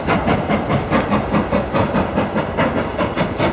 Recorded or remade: recorded